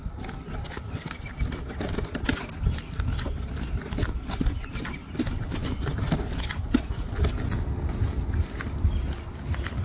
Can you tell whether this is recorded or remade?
recorded